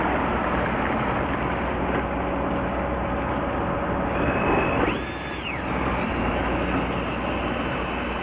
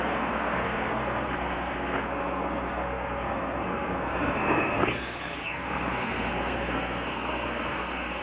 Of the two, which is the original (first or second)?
first